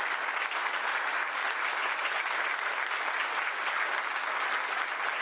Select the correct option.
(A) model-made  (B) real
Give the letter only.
B